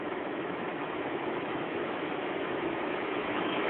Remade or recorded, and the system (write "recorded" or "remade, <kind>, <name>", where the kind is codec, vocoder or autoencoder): remade, autoencoder, DAC-VAE